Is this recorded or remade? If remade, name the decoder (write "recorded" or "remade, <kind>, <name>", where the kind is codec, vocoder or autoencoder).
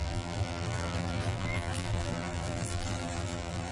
remade, vocoder, BigVGAN v2